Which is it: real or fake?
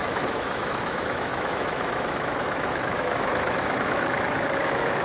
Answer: fake